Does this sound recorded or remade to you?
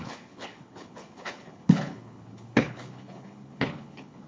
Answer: remade